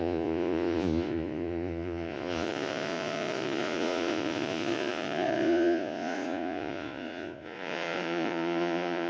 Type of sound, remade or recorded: remade